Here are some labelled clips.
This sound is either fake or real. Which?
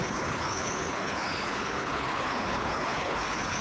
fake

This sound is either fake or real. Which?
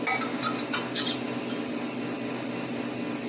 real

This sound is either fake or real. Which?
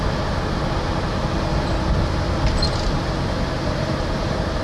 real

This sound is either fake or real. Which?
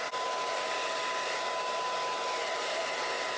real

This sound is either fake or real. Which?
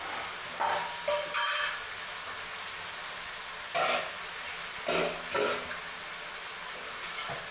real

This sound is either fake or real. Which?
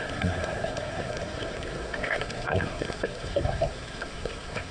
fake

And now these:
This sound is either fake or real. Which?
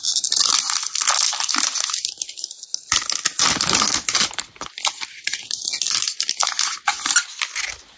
real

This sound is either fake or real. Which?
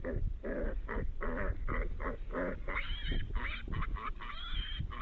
real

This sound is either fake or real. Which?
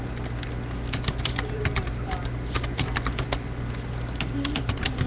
real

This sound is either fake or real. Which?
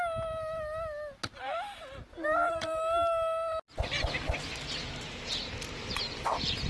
real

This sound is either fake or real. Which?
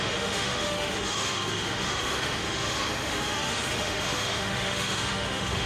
fake